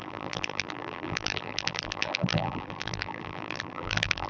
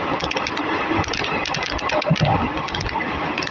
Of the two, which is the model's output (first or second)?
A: first